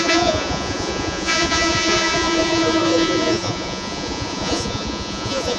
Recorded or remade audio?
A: remade